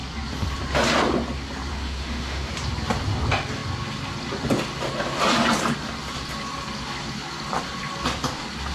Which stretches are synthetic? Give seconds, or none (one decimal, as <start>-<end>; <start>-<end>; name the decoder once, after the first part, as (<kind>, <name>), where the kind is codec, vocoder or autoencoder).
1.7-2.5 (autoencoder, DAC-VAE)